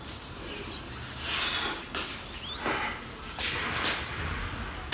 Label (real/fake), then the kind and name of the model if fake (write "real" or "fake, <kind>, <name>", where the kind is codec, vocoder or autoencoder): real